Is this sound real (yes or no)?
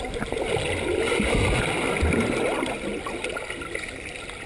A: yes